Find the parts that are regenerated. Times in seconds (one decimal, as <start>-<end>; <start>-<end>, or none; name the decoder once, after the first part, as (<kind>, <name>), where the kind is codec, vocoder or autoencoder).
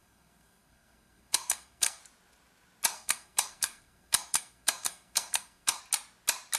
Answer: 0.0-2.0 (codec, SNAC); 2.9-5.8